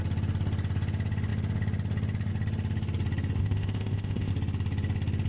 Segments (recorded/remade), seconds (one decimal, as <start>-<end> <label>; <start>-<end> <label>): 0.0-3.4 recorded; 3.4-4.3 remade; 4.3-5.3 recorded